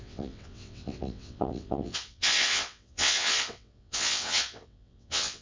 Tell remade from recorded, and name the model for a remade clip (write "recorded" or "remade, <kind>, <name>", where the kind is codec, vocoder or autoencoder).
remade, vocoder, WaveNeXt